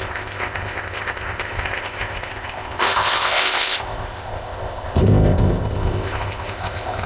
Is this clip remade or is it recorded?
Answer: remade